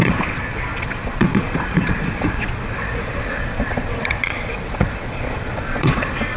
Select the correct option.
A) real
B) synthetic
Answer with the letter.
B